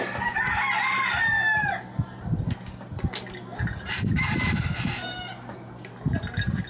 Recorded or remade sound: recorded